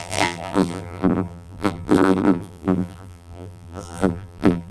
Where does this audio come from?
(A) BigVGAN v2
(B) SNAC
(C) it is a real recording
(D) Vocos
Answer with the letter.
A